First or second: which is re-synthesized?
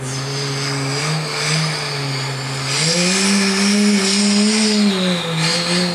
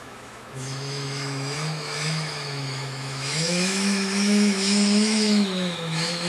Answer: second